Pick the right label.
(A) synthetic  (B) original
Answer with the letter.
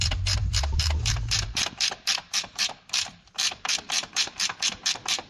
A